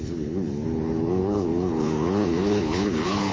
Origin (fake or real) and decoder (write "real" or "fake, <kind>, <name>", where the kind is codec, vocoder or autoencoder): fake, codec, HILCodec